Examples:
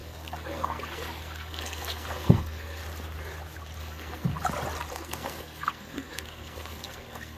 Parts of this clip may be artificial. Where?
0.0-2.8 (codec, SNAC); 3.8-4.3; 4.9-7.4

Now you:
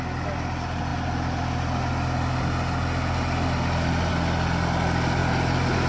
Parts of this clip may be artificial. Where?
none

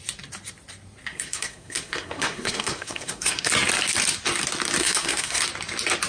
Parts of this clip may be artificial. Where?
1.1-3.5 (codec, SNAC); 4.8-5.4

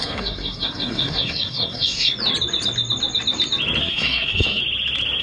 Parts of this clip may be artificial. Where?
0.0-2.1 (codec, SNAC); 3.8-4.6

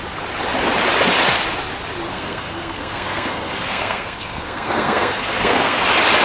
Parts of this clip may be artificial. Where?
2.1-5.8 (codec, SNAC)

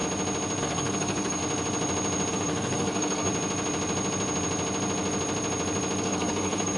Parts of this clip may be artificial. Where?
0.6-1.4 (codec, SNAC); 2.3-3.3; 6.0-6.8

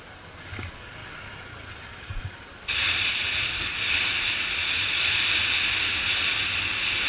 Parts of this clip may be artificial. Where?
none